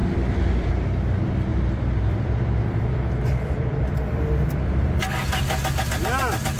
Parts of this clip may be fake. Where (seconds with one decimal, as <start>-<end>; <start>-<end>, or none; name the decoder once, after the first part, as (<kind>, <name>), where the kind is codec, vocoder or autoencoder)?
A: 0.0-0.7 (vocoder, BigVGAN v2); 1.5-5.0